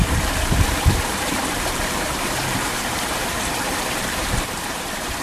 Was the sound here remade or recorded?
remade